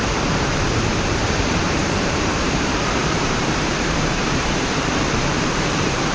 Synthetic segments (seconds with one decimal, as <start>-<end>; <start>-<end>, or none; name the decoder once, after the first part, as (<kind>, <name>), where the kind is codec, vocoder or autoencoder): 0.0-6.1 (vocoder, BigVGAN v2)